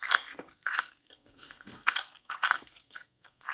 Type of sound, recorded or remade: remade